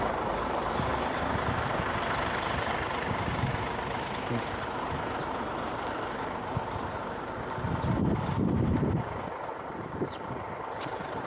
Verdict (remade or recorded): remade